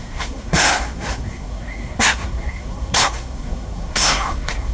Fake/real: fake